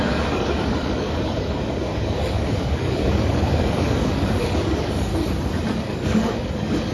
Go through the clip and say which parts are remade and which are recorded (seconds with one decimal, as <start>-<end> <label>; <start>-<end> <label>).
0.0-5.1 remade; 5.1-5.8 recorded; 5.8-6.9 remade